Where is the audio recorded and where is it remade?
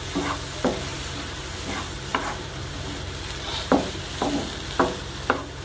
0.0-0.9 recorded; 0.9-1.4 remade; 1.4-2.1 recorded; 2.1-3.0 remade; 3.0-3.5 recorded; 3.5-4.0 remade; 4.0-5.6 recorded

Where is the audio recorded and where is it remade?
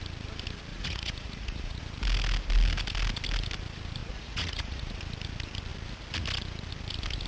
0.0-0.7 recorded; 0.7-1.8 remade; 1.8-4.0 recorded; 4.0-5.0 remade; 5.0-7.3 recorded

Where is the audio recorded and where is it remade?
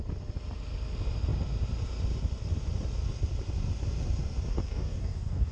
0.0-4.5 recorded; 4.5-5.5 remade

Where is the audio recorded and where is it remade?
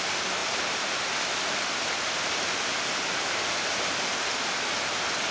0.0-0.4 recorded; 0.4-1.1 remade; 1.1-5.3 recorded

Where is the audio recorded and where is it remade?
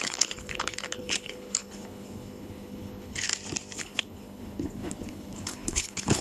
0.0-3.3 remade; 3.3-3.8 recorded; 3.8-6.2 remade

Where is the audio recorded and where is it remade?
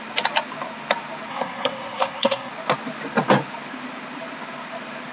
0.0-1.3 recorded; 1.3-2.5 remade; 2.5-5.1 recorded